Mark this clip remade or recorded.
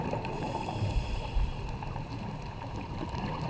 remade